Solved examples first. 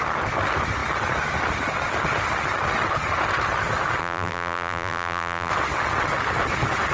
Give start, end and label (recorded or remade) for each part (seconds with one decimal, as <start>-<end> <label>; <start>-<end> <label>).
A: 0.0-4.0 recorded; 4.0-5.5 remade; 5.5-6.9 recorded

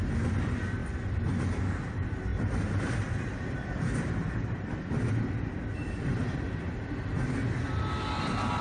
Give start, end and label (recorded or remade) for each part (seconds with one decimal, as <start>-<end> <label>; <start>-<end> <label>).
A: 0.0-0.8 recorded; 0.8-1.9 remade; 1.9-2.3 recorded; 2.3-4.9 remade; 4.9-8.6 recorded

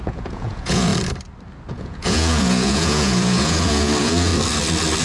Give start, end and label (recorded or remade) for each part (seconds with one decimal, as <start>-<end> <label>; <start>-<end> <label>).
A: 0.0-0.9 remade; 0.9-1.7 recorded; 1.7-4.3 remade; 4.3-5.0 recorded